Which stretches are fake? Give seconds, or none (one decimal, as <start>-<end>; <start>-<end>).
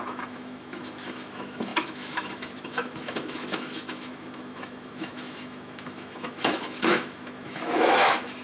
0.0-8.4